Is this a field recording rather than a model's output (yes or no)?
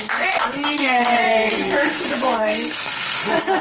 no